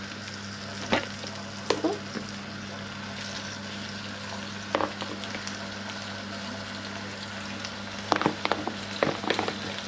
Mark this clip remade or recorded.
recorded